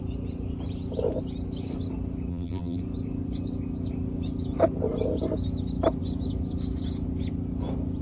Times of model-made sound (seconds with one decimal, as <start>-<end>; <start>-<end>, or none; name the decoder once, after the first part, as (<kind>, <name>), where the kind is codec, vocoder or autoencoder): 2.3-2.8 (vocoder, BigVGAN v2)